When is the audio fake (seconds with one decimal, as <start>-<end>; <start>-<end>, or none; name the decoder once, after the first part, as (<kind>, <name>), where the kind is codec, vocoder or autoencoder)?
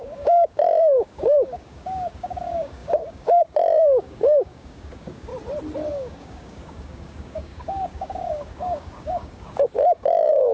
0.0-5.3 (codec, DAC); 5.9-10.5